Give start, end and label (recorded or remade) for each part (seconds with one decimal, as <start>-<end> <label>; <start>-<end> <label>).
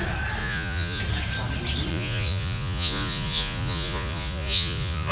0.0-0.4 recorded; 0.4-1.0 remade; 1.0-1.9 recorded; 1.9-5.1 remade